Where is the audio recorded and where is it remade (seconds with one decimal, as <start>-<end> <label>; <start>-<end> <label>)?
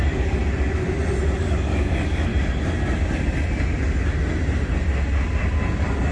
0.0-0.4 remade; 0.4-1.4 recorded; 1.4-2.3 remade; 2.3-6.1 recorded